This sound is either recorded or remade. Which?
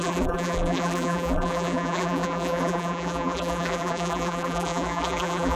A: remade